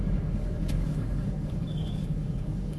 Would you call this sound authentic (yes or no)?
no